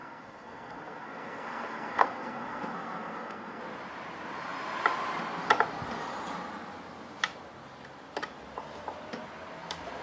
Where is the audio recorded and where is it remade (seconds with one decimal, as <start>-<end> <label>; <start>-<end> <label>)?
0.0-3.6 remade; 3.6-10.0 recorded